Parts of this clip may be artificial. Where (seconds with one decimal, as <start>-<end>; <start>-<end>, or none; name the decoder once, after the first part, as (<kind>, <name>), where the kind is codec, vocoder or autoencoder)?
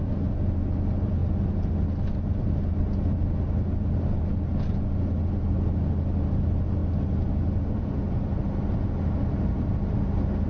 none